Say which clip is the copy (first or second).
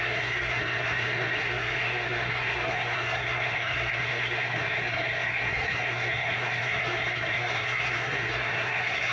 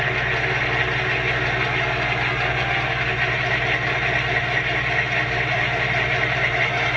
first